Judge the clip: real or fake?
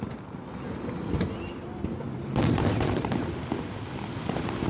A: real